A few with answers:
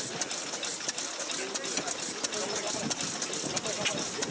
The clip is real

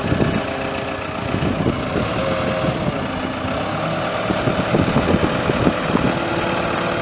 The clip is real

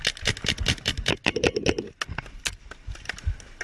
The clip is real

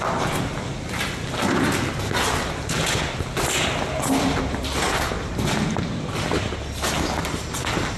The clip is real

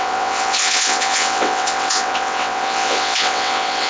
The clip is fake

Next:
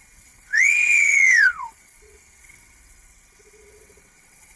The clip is fake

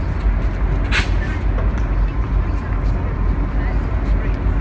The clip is real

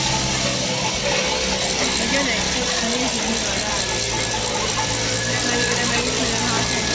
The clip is real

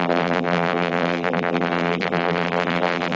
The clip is fake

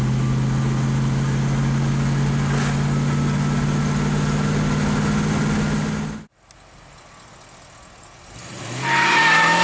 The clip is real